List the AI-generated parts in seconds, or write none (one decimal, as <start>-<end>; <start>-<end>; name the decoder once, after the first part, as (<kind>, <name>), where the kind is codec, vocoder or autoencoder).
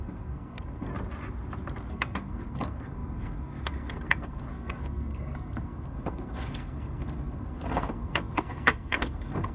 0.0-0.9 (codec, SNAC); 1.9-9.5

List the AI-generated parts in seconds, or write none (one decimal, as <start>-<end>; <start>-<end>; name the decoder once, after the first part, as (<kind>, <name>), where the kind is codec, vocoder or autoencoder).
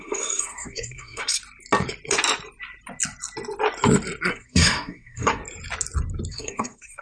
0.0-1.4 (codec, SNAC); 4.3-5.4; 6.3-7.0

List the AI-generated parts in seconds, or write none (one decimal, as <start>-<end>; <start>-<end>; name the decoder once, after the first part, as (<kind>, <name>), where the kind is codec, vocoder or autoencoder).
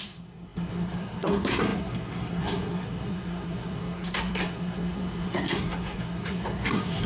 0.0-7.1 (codec, SNAC)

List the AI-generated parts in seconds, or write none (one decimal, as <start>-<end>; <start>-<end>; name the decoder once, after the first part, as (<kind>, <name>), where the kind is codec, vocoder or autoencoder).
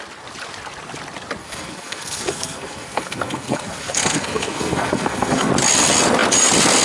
1.4-5.5 (codec, SNAC)